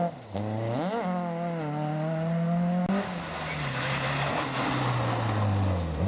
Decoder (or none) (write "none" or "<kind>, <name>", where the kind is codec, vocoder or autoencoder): none